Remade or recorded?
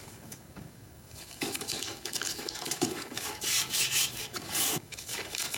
remade